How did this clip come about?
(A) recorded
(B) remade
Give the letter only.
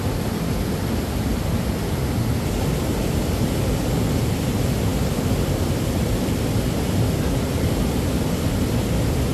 A